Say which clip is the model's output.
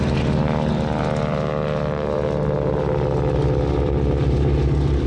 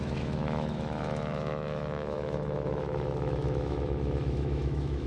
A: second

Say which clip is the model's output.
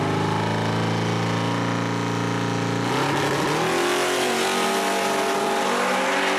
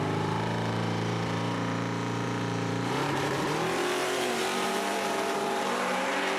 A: second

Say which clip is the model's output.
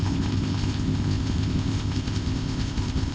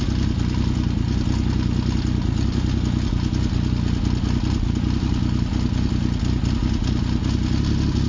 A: first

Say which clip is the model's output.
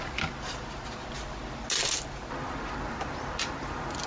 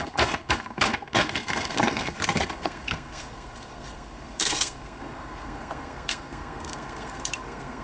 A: second